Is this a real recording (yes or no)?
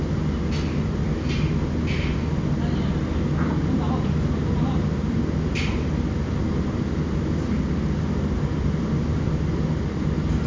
yes